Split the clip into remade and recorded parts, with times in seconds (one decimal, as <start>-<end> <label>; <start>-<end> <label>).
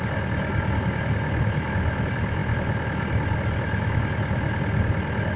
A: 0.0-5.4 recorded